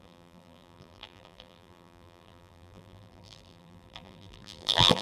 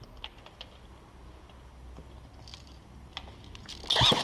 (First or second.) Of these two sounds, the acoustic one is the second